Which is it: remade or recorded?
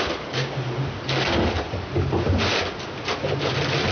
recorded